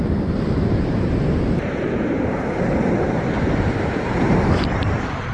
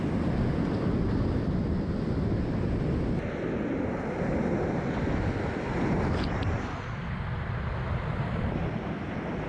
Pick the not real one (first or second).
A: first